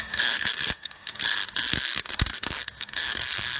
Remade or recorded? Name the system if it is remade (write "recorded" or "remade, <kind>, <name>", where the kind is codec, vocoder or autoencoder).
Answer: remade, codec, SNAC